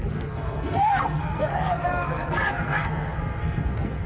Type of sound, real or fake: fake